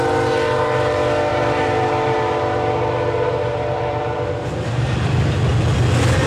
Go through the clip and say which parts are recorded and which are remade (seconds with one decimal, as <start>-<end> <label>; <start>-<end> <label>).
0.0-1.3 recorded; 1.3-4.9 remade; 4.9-6.3 recorded